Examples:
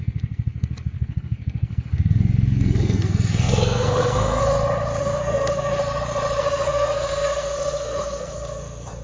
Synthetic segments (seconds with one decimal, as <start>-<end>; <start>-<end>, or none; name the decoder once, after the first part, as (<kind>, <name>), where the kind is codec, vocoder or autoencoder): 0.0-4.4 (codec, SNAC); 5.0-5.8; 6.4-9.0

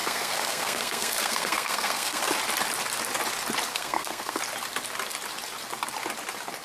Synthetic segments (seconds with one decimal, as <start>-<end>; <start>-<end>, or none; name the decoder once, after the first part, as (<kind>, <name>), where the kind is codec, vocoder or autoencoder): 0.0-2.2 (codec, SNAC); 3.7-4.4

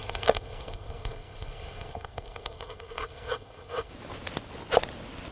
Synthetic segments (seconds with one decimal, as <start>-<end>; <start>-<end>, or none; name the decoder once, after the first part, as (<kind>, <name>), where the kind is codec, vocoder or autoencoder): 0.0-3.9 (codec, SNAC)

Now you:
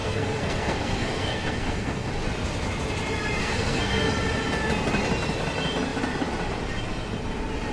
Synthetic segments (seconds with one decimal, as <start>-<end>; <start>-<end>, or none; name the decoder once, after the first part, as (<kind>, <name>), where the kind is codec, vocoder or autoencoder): 0.0-2.1 (codec, SNAC); 3.4-4.1

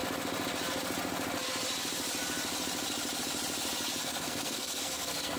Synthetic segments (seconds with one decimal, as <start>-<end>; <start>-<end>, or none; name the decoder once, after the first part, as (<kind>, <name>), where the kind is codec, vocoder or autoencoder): 4.0-5.4 (codec, SNAC)

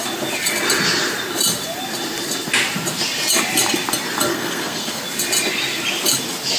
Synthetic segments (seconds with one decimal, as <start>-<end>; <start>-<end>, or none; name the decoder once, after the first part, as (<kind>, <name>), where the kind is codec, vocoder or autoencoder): 4.3-5.0 (codec, SNAC)

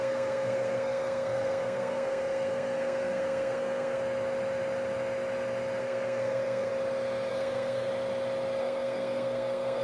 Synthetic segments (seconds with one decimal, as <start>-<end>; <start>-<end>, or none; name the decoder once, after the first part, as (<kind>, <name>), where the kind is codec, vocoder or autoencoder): 0.0-4.0 (codec, SNAC); 5.8-6.7; 7.3-7.9; 8.6-9.8